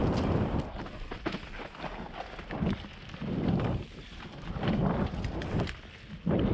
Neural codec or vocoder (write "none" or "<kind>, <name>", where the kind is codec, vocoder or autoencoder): none